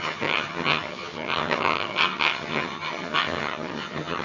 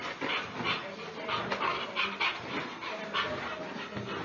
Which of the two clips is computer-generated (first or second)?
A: first